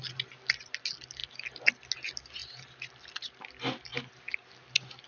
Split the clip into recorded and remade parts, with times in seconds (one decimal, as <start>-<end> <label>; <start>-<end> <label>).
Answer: 0.0-1.2 recorded; 1.2-1.7 remade; 1.7-5.1 recorded